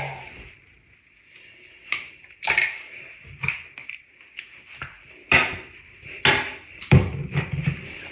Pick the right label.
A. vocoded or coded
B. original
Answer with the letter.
B